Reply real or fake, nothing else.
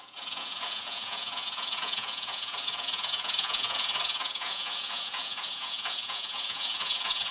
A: fake